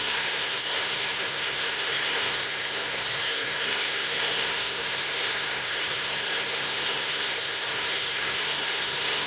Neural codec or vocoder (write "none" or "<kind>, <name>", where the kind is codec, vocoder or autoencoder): codec, SNAC